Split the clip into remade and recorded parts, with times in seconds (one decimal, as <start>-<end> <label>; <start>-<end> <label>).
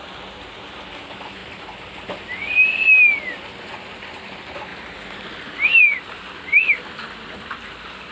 0.0-8.1 recorded